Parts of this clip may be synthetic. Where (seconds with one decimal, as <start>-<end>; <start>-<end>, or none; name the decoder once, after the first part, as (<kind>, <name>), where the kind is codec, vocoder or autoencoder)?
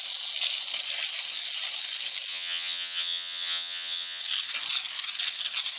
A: 2.3-4.2 (vocoder, HiFi-GAN)